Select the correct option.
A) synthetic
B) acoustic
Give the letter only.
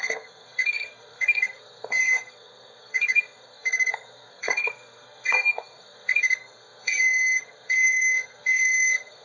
A